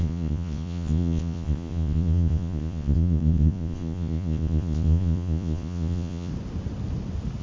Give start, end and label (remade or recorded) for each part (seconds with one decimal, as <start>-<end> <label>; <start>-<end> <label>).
0.0-6.3 remade; 6.3-7.4 recorded